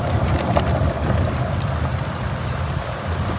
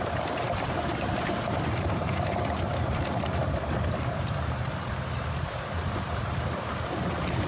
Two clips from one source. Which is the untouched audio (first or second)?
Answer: first